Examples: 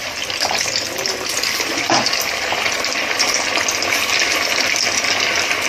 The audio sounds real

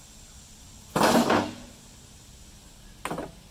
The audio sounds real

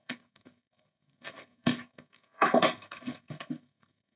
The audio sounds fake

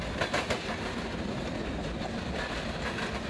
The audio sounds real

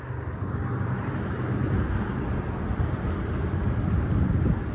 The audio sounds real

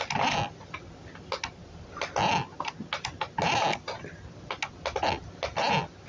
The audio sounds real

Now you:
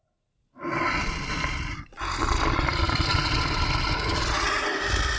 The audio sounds real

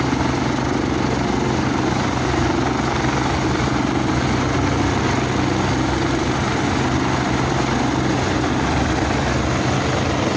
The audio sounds real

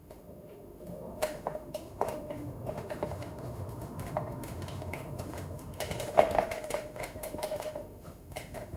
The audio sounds fake